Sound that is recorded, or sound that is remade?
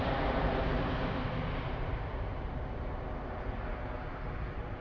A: recorded